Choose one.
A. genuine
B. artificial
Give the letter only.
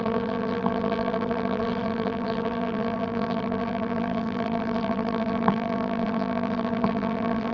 B